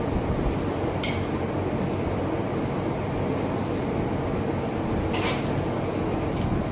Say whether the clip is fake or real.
real